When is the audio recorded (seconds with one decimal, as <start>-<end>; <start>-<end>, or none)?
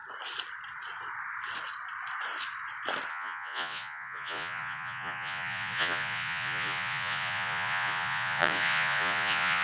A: 0.0-3.1